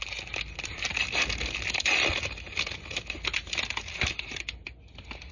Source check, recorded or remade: recorded